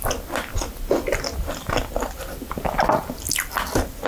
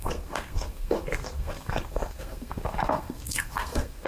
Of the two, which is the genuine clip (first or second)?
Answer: first